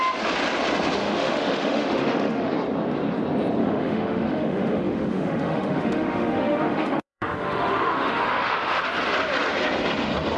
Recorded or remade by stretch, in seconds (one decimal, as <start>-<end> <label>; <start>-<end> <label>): 0.0-1.0 recorded; 1.0-2.5 remade; 2.5-3.6 recorded; 3.6-8.8 remade; 8.8-10.4 recorded